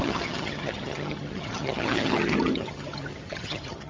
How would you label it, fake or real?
fake